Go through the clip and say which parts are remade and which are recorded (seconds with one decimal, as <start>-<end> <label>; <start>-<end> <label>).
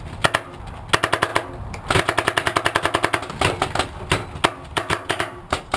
0.0-4.7 recorded; 4.7-5.8 remade